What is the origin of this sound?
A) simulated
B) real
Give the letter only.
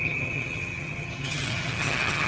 A